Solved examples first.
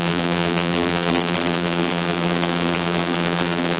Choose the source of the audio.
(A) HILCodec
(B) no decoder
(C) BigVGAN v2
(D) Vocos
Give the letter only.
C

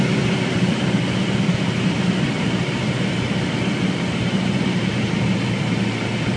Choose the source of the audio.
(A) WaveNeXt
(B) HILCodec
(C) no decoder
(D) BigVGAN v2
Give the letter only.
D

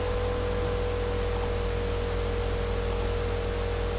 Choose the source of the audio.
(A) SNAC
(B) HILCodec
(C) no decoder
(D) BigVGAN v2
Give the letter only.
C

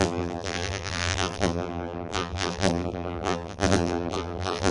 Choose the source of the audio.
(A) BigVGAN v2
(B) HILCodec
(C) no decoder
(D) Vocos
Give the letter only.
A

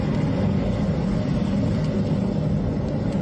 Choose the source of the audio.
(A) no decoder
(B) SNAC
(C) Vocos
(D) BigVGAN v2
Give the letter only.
A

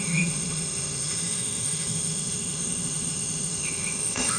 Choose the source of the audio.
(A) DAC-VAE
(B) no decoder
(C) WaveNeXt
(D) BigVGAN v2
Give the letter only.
A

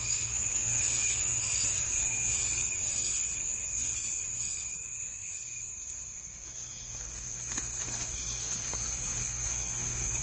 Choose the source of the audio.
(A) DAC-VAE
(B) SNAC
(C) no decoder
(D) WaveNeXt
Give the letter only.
B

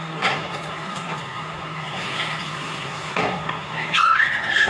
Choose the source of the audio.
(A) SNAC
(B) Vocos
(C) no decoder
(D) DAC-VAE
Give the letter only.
A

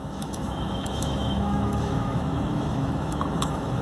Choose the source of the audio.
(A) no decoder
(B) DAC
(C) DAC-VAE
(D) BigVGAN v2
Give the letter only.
C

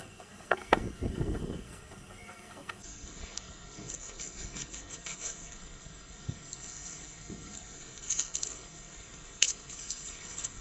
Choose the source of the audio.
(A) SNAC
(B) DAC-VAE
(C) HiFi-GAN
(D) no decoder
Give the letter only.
A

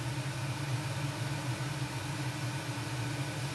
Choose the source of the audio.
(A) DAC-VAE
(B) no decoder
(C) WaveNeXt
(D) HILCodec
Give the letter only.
B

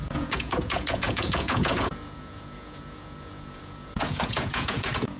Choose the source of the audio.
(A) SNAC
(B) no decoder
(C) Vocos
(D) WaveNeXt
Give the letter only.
C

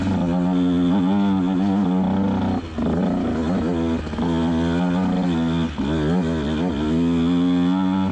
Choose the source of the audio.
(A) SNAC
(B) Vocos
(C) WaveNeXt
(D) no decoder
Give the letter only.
D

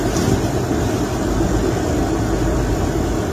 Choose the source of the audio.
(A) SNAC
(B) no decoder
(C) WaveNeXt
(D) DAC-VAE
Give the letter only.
B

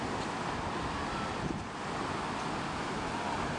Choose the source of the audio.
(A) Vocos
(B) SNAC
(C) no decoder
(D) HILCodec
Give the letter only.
C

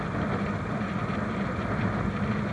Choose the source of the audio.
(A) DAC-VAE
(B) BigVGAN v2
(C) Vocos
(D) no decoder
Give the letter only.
B